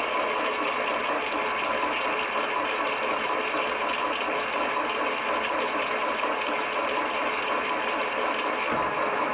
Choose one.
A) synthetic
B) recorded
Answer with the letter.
B